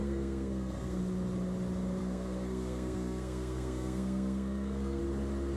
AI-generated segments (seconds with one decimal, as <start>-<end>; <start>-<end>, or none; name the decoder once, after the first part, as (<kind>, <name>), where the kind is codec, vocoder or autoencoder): 0.0-1.0 (codec, SNAC); 2.0-5.0